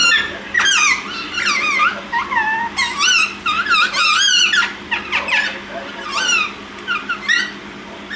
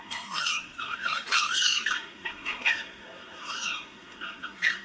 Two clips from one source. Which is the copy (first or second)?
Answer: second